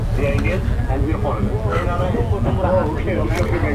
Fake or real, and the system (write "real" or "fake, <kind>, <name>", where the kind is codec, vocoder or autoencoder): real